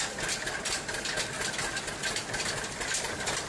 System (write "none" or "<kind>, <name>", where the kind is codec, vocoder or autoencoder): none